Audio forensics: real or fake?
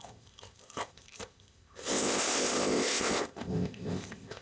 fake